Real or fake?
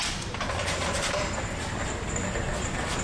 fake